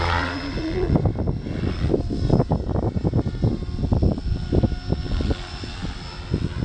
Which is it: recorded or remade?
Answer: recorded